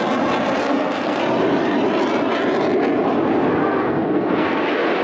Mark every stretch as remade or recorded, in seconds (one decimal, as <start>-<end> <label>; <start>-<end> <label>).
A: 0.0-0.6 recorded; 0.6-1.2 remade; 1.2-3.6 recorded; 3.6-4.6 remade; 4.6-5.0 recorded